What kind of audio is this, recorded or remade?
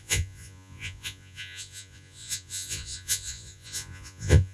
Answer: remade